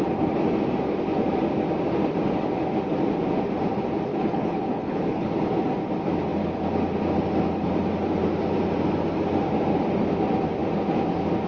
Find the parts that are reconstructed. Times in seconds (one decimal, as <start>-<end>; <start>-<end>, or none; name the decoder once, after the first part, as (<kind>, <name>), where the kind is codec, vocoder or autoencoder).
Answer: 4.1-5.3 (codec, HILCodec)